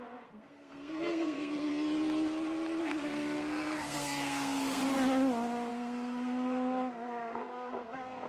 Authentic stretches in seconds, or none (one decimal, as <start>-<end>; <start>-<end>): 1.7-2.8; 4.8-5.7